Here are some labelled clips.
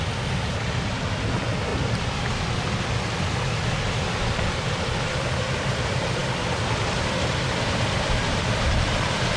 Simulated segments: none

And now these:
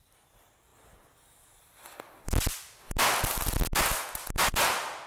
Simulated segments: none

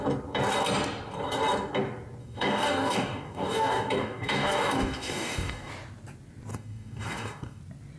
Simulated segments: 2.2-5.7 (codec, DAC); 6.5-7.6

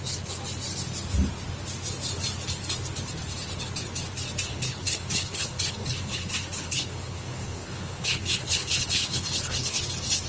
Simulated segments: 4.5-9.8 (codec, HILCodec)

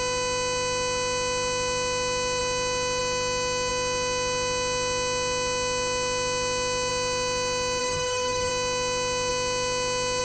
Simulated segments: 7.8-8.5 (codec, DAC)

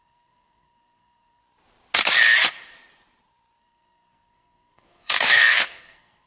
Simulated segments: 0.0-1.4 (codec, SNAC); 3.6-6.3